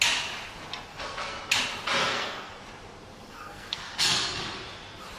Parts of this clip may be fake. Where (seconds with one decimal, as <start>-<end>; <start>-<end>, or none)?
0.9-1.4; 2.0-2.6; 3.3-4.4